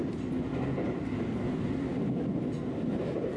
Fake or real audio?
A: real